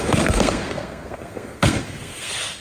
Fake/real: fake